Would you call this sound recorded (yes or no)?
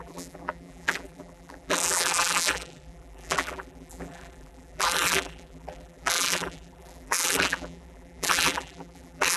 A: no